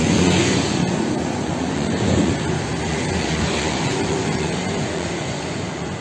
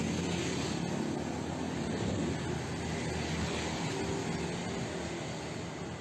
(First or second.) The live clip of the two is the second